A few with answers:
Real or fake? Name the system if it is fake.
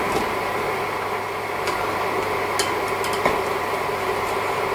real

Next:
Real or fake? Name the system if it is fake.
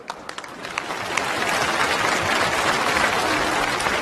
fake, vocoder, BigVGAN v2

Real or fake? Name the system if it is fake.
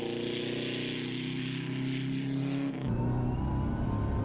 real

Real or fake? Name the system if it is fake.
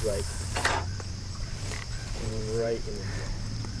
fake, vocoder, BigVGAN v2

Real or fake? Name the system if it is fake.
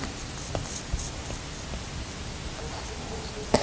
real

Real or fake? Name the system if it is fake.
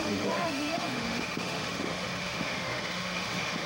fake, autoencoder, DAC-VAE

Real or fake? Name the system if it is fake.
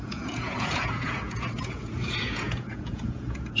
fake, vocoder, Vocos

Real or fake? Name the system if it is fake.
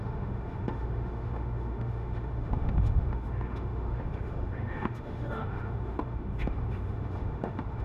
fake, autoencoder, DAC-VAE